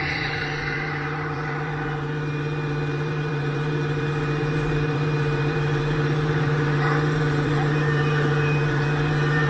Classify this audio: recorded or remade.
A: remade